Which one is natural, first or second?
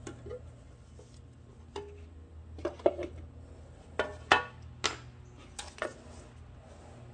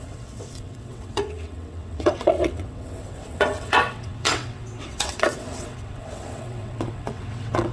first